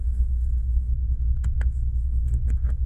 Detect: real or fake fake